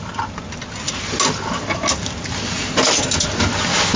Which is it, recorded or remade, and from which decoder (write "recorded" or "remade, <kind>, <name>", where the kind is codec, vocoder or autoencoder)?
recorded